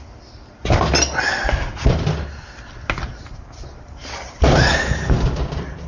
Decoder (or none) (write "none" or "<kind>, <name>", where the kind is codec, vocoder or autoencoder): none